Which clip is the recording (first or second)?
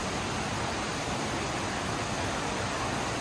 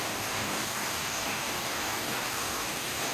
first